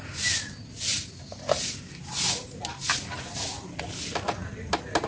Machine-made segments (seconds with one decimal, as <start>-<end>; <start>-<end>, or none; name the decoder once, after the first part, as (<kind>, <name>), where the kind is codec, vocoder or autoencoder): none